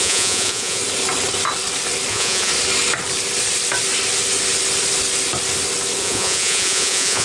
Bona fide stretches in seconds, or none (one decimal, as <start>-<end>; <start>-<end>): 0.8-2.1; 2.5-6.0